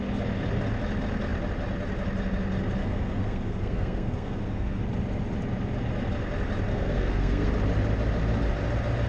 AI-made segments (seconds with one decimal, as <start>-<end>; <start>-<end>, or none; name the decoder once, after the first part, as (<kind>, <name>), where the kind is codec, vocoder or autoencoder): 2.8-4.8 (codec, SNAC); 6.7-7.5